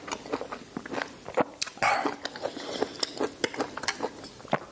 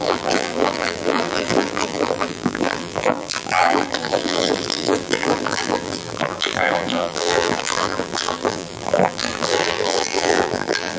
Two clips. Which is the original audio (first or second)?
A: first